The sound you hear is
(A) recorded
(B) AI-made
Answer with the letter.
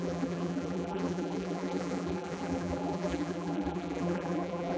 B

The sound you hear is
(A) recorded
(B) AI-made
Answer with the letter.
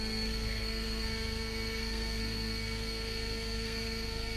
B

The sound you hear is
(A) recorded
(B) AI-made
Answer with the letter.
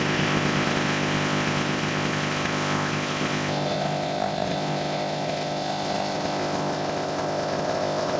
B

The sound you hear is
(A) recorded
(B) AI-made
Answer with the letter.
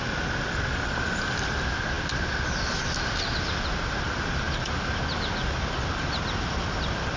A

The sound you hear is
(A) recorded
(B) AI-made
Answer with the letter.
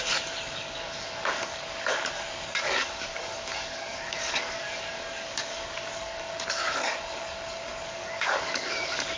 B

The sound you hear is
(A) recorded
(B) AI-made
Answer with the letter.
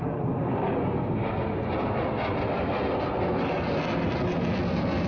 A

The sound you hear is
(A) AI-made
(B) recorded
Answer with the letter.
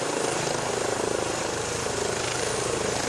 A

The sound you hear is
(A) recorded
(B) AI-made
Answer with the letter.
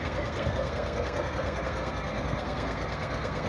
B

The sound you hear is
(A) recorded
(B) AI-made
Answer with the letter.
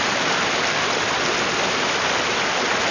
A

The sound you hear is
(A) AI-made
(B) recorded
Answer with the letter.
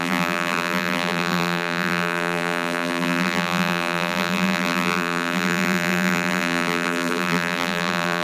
A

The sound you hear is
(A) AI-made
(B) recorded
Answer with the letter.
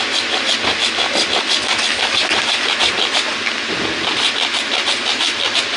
B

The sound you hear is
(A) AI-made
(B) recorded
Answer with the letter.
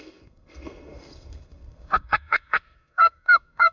A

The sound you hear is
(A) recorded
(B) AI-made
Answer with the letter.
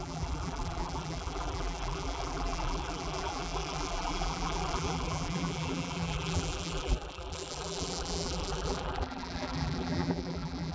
B